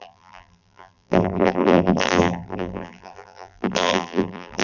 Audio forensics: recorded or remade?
remade